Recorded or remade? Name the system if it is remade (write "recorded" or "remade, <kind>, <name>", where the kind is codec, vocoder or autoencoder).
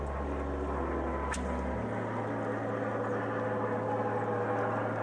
recorded